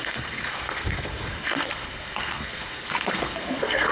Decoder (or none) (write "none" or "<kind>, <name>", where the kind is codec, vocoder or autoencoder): codec, SNAC